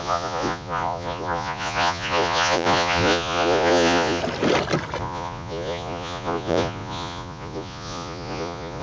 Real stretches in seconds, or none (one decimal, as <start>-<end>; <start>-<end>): 4.2-5.0